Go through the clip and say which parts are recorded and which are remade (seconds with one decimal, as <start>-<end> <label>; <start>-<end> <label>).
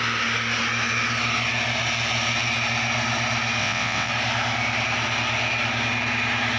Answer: 0.0-3.6 recorded; 3.6-4.1 remade; 4.1-6.6 recorded